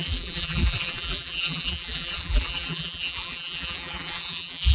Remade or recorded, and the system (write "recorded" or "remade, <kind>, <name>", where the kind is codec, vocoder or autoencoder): remade, vocoder, BigVGAN v2